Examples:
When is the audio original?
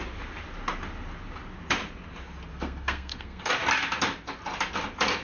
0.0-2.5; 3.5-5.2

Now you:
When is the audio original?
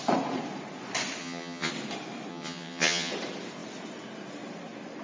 0.0-1.2; 1.7-2.3; 3.1-5.0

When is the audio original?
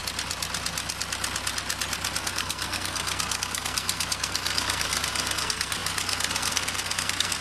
0.0-2.2